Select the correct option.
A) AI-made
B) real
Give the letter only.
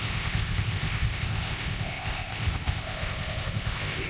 A